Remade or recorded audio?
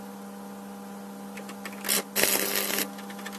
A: recorded